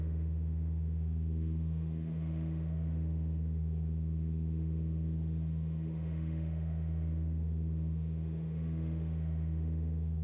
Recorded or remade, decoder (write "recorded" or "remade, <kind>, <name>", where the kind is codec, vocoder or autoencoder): remade, autoencoder, DAC-VAE